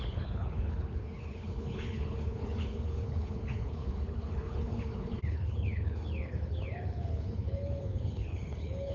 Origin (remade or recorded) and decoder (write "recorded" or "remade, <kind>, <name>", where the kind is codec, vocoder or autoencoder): remade, codec, HILCodec